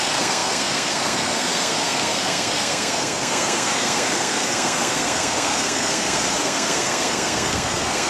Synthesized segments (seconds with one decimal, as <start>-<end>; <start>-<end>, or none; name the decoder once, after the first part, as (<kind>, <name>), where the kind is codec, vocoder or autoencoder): 0.0-8.1 (codec, SNAC)